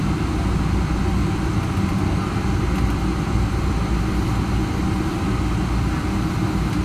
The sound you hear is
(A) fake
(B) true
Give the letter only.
B